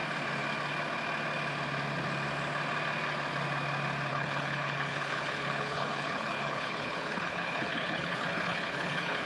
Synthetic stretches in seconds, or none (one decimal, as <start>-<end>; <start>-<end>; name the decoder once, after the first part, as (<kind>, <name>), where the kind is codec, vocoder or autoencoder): 4.1-9.3 (codec, HILCodec)